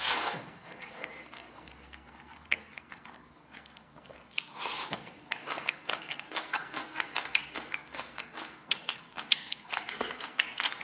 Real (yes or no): no